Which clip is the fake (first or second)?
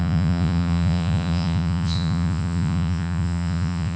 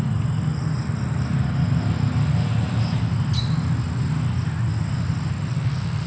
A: first